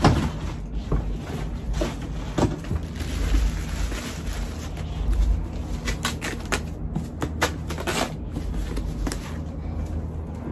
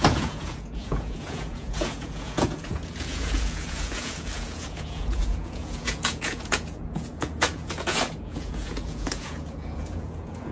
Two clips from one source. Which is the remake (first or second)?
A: second